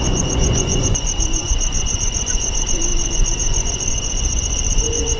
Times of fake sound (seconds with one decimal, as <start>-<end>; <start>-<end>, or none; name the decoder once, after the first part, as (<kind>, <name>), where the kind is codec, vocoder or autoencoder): 0.0-5.2 (vocoder, Vocos)